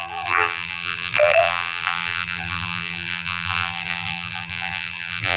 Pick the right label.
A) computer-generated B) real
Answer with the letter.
A